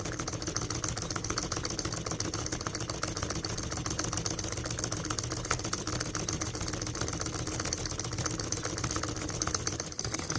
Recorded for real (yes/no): yes